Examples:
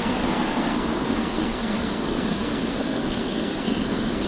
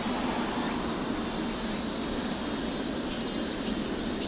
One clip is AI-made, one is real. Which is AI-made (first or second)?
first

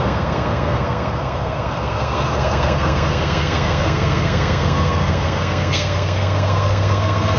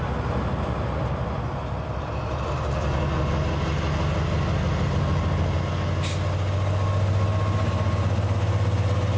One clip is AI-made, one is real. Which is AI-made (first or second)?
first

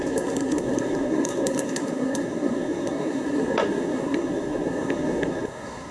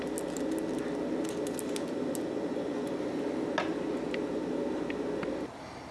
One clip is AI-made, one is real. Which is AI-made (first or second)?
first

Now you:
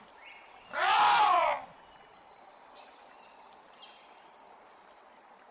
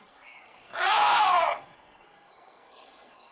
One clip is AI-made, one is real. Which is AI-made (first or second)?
second